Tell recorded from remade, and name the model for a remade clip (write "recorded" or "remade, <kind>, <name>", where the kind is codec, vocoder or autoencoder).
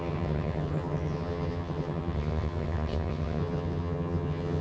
remade, vocoder, HiFi-GAN